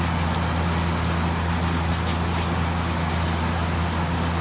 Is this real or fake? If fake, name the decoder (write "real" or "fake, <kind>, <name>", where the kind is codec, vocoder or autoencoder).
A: real